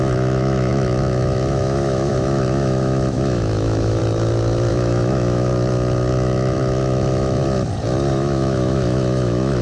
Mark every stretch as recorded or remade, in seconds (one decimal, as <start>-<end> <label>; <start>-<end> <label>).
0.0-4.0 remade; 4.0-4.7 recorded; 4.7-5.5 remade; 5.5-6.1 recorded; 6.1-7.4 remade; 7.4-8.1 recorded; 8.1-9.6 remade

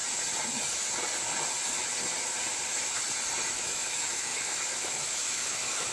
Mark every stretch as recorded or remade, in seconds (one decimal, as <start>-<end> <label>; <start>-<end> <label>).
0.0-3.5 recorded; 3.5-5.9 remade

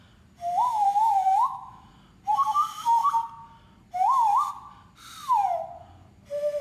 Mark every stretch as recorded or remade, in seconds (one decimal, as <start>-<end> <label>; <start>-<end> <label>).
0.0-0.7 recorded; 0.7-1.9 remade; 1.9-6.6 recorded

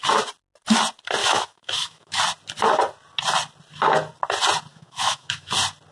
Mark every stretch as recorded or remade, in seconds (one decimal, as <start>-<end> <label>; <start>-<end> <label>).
0.0-1.2 recorded; 1.2-2.2 remade; 2.2-4.7 recorded; 4.7-5.5 remade; 5.5-5.9 recorded